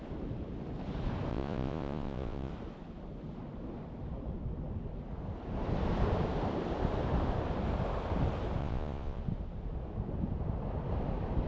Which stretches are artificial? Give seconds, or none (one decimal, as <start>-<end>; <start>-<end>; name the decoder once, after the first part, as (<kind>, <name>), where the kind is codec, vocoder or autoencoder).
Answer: 1.3-2.5 (vocoder, Vocos); 8.6-9.2